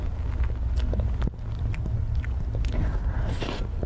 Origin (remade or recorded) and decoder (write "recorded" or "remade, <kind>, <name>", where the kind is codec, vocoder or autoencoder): recorded